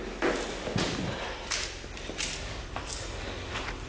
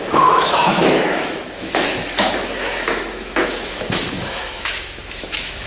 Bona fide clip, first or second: first